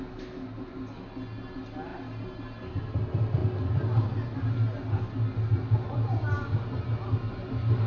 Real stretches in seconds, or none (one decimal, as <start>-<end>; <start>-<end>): 0.0-7.9